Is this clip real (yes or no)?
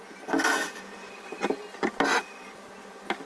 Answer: yes